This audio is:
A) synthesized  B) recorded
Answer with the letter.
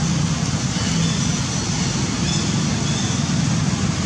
B